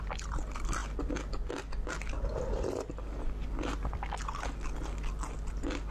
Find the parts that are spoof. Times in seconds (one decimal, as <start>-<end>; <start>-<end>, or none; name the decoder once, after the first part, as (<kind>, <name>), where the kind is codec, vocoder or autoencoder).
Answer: none

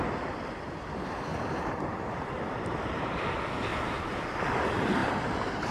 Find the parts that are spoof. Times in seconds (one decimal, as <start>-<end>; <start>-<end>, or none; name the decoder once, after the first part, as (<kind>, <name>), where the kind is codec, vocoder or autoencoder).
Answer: 1.3-3.2 (vocoder, BigVGAN v2); 3.7-4.4; 5.0-5.7

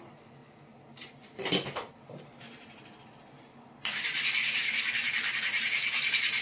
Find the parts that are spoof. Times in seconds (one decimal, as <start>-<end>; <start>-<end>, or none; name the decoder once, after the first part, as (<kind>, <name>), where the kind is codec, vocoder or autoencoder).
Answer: 0.0-0.4 (vocoder, BigVGAN v2); 1.9-5.0; 5.6-6.4

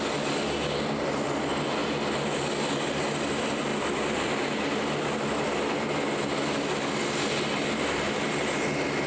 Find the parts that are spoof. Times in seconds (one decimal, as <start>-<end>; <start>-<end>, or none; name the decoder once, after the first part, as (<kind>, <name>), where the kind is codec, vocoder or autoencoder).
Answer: 3.7-4.8 (vocoder, BigVGAN v2); 7.0-8.2

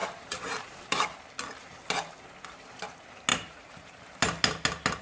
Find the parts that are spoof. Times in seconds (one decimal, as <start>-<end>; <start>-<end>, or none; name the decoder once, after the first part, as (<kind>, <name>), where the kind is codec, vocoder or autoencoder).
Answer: 0.0-1.0 (vocoder, BigVGAN v2); 3.3-4.1

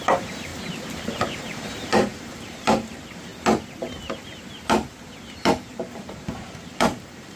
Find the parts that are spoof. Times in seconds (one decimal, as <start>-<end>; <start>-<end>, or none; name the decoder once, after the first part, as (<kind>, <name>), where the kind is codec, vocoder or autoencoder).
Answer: 0.0-0.5 (vocoder, BigVGAN v2); 1.0-3.3; 5.3-7.4

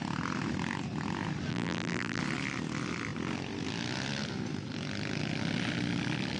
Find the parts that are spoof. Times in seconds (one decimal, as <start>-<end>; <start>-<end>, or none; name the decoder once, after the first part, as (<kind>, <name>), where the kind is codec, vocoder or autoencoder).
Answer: 1.5-2.2 (vocoder, BigVGAN v2)